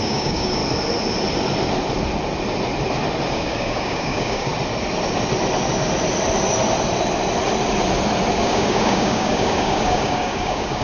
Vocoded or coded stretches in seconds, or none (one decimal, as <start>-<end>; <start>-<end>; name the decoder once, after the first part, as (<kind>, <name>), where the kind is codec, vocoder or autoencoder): 0.0-0.6 (codec, DAC); 3.3-4.5; 8.3-10.8